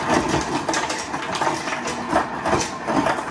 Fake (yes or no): no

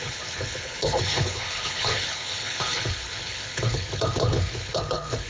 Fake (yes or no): yes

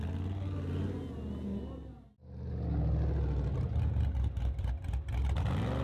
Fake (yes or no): no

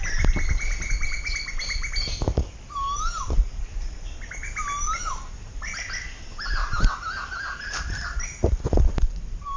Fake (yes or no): no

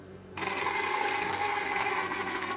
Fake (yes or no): yes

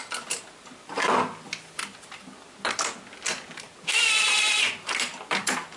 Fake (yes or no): yes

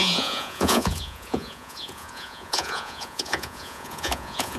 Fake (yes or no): yes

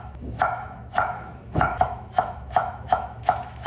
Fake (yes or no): yes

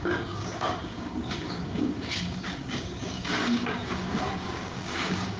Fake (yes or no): yes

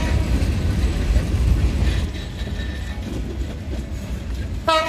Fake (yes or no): no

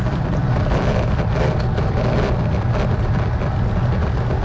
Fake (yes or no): no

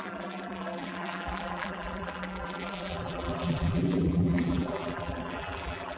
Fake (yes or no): yes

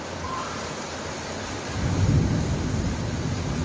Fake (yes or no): no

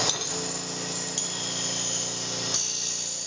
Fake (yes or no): no